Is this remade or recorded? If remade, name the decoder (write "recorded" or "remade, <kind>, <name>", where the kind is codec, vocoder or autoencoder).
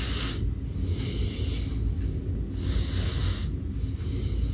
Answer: recorded